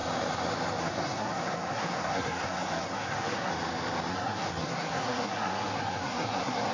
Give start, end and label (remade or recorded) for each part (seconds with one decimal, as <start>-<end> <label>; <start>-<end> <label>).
0.0-0.8 recorded; 0.8-3.5 remade; 3.5-4.1 recorded; 4.1-6.7 remade